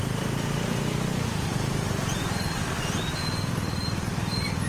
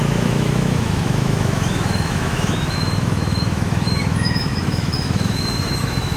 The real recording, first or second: first